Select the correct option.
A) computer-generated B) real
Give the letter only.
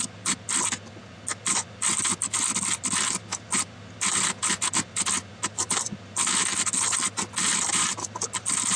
B